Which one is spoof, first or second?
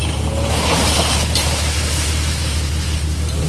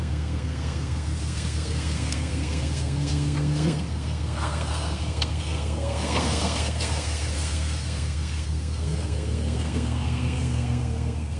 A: second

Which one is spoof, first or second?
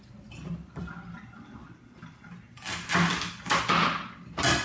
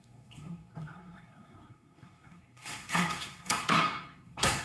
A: second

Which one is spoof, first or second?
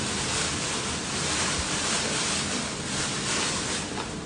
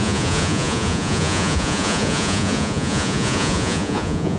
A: second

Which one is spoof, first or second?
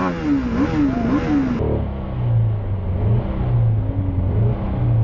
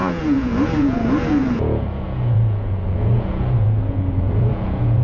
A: second